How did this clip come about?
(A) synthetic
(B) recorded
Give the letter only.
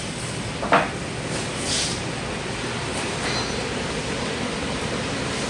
B